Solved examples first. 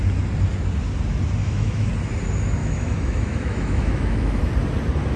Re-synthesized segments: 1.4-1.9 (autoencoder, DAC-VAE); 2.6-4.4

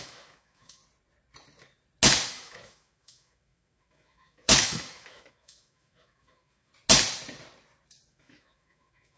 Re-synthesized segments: 0.0-0.8 (autoencoder, DAC-VAE); 2.3-6.7; 8.1-9.2

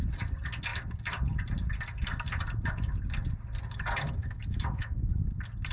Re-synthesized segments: 4.2-5.0 (autoencoder, DAC-VAE)

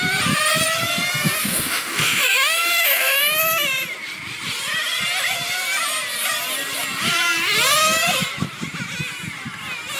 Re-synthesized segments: 1.4-3.2 (autoencoder, DAC-VAE)